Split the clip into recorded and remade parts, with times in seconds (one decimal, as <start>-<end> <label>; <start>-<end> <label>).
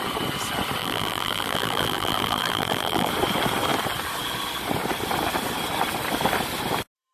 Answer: 0.0-0.8 recorded; 0.8-3.1 remade; 3.1-7.1 recorded